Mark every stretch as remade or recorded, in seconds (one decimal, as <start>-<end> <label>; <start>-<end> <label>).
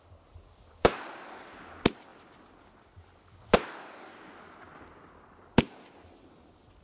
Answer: 0.0-6.8 recorded